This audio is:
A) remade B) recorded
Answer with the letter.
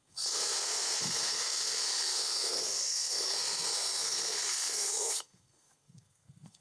A